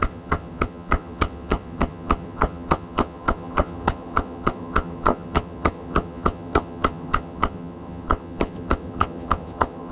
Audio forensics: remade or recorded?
remade